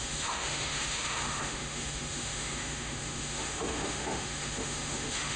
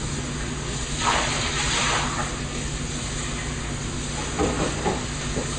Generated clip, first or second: first